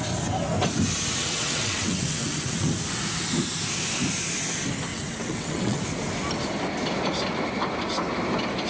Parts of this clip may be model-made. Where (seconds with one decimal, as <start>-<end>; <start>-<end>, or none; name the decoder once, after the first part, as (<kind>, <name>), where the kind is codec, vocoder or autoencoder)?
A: 1.2-2.7 (vocoder, WaveNeXt); 4.9-5.8